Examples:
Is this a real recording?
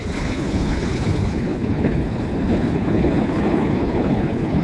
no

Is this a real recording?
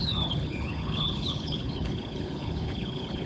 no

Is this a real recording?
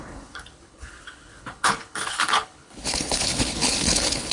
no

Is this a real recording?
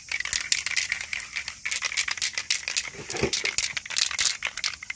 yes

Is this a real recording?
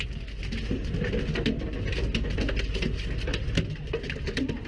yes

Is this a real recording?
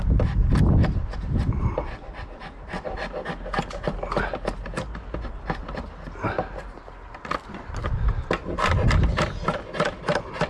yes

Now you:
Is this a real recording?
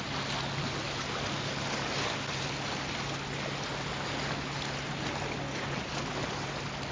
yes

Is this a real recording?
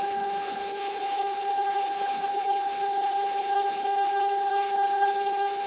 no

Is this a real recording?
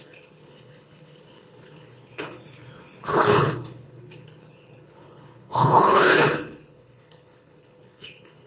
no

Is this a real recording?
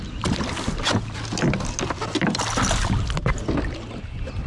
yes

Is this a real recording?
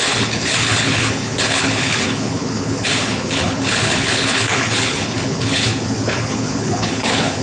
no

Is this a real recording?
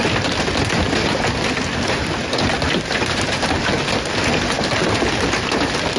yes